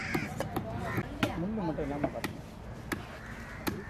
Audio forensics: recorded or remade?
recorded